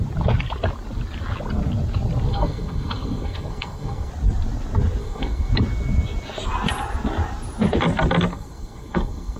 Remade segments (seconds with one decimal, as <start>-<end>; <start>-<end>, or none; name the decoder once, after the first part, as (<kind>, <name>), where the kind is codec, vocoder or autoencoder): 2.3-4.1 (codec, SNAC); 5.0-5.5; 8.3-9.4